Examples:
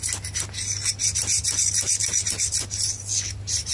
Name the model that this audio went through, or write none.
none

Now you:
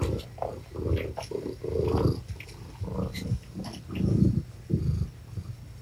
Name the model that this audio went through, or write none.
none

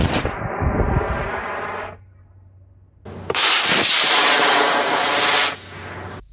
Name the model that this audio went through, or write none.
none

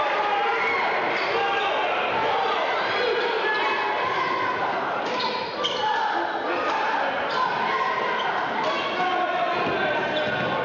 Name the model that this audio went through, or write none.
none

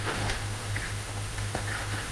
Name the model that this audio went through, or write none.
autoencoder, DAC-VAE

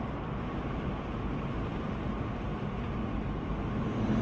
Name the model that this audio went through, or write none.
none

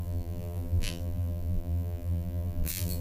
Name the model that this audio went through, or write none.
vocoder, BigVGAN v2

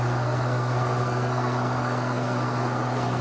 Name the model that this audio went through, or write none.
codec, SNAC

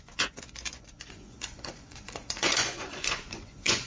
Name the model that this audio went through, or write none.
vocoder, Vocos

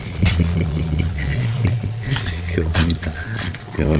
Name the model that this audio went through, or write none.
vocoder, Vocos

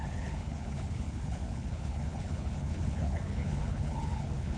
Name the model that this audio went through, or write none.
codec, HILCodec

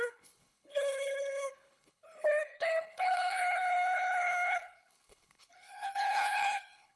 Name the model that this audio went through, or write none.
codec, HILCodec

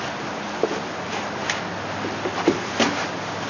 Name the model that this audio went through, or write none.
none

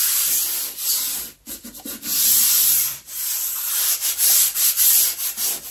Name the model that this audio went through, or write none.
none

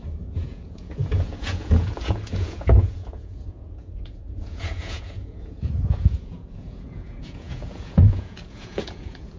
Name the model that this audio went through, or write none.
vocoder, Vocos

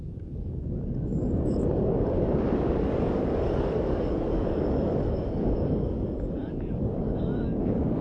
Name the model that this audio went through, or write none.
codec, DAC